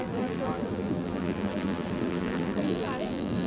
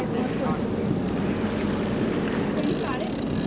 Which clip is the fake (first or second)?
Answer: first